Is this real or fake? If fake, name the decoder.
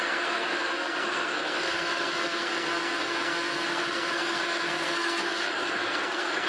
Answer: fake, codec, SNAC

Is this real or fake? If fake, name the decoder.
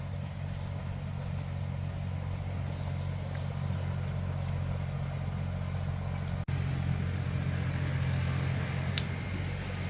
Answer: real